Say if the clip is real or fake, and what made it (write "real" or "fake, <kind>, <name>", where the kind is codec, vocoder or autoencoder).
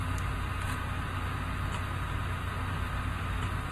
real